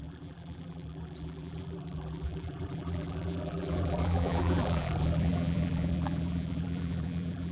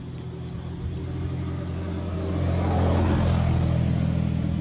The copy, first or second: first